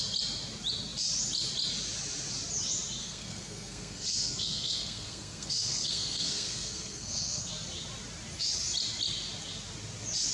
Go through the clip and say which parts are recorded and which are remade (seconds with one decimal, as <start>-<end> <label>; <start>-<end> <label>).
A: 0.0-3.0 recorded; 3.0-7.5 remade; 7.5-10.3 recorded